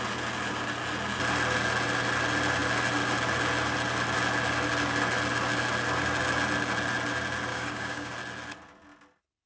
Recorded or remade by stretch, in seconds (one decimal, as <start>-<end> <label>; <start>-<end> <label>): 0.0-7.5 recorded; 7.5-8.1 remade; 8.1-9.5 recorded